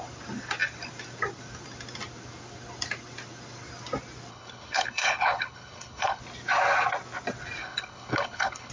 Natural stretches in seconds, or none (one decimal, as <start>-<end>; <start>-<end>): 0.0-4.3; 6.2-7.6